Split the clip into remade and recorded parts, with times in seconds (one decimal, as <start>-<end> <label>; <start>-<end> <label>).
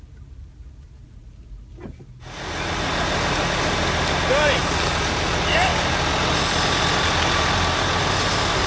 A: 0.0-8.7 recorded